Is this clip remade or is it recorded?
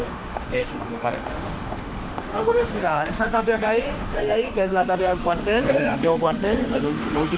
remade